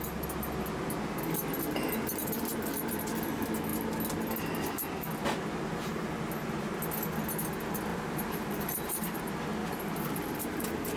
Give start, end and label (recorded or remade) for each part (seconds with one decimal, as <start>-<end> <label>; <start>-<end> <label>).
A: 0.0-7.9 recorded; 7.9-9.2 remade; 9.2-9.6 recorded; 9.6-11.0 remade